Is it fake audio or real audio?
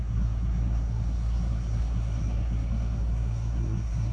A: fake